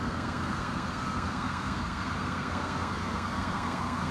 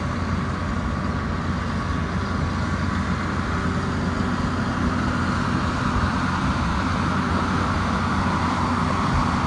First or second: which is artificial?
first